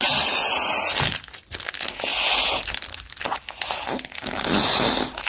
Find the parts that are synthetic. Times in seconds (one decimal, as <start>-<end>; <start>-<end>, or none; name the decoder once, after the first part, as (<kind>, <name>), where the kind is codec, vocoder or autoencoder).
none